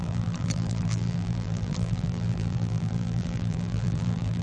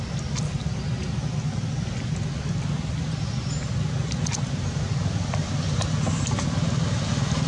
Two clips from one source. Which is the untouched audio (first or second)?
second